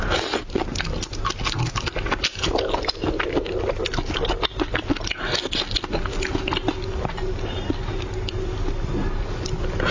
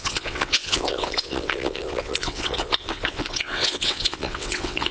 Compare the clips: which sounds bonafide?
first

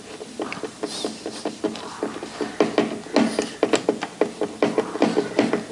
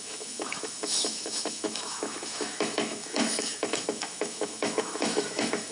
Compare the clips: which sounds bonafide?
first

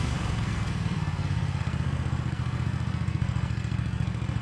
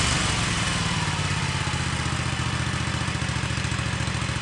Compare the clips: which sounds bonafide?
second